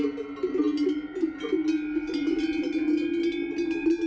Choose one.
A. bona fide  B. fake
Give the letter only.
A